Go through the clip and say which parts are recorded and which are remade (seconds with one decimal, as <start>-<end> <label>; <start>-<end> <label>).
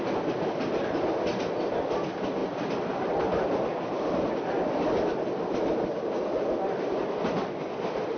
0.0-8.2 recorded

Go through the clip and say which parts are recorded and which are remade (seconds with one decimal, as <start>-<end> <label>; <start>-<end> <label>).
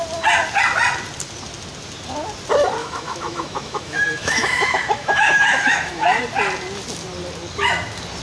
0.0-2.8 recorded; 2.8-6.2 remade; 6.2-8.2 recorded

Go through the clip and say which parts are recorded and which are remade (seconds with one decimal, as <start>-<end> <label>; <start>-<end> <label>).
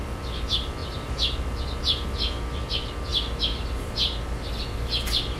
0.0-5.4 recorded